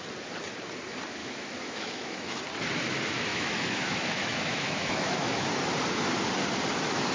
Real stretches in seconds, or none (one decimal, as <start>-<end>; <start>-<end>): 0.0-1.2; 2.4-3.3; 5.5-7.1